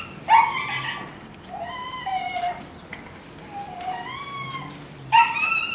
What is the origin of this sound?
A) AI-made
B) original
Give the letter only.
B